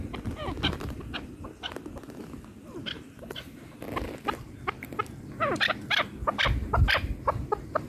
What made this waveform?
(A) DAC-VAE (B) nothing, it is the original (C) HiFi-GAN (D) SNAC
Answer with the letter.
B